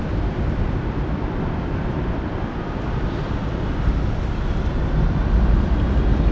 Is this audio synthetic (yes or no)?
yes